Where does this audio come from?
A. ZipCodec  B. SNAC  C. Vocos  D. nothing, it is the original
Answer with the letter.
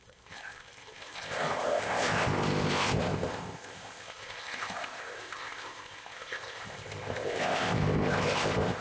A